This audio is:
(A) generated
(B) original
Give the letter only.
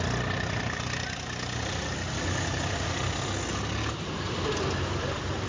B